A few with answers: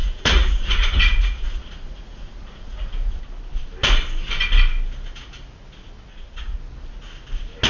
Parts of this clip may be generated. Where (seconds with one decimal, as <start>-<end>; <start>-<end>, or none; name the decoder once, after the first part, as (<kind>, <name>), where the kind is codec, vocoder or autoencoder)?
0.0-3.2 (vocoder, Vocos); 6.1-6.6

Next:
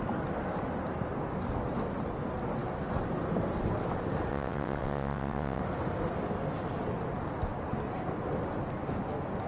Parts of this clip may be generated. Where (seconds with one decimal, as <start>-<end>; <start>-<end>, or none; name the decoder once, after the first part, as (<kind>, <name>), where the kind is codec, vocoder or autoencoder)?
4.3-5.6 (vocoder, WaveNeXt)

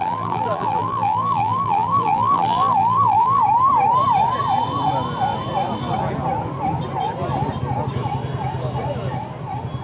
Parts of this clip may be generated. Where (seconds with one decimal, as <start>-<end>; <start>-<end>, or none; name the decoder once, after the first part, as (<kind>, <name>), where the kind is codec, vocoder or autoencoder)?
0.0-3.4 (vocoder, BigVGAN v2)

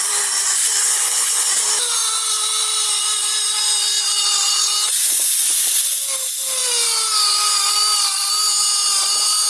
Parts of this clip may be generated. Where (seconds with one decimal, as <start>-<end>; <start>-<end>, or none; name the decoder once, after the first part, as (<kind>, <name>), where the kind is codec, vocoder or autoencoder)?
0.8-1.5 (codec, HILCodec)

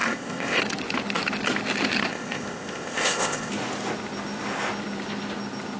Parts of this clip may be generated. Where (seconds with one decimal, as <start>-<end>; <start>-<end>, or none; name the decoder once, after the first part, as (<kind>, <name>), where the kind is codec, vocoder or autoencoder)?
0.0-0.6 (codec, ZipCodec); 2.1-3.5

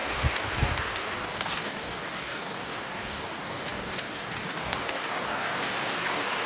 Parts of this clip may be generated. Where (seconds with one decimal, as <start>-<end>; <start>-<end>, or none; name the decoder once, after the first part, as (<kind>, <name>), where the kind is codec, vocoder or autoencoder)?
0.0-6.5 (codec, DAC)